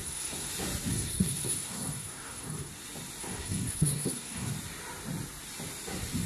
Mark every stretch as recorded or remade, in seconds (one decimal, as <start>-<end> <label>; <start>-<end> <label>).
0.0-0.5 remade; 0.5-0.9 recorded; 0.9-2.7 remade; 2.7-3.2 recorded; 3.2-4.5 remade; 4.5-6.3 recorded